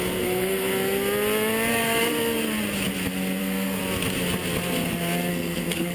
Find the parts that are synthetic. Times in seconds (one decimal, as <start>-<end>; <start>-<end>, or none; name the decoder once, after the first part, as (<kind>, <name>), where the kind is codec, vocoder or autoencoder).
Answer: 0.0-0.7 (codec, SNAC); 1.7-2.1; 3.4-3.8; 5.3-5.9